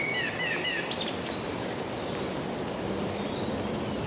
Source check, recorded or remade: recorded